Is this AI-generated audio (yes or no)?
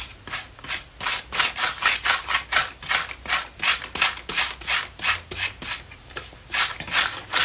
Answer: no